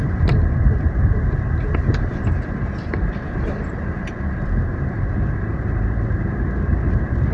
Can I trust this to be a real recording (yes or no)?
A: no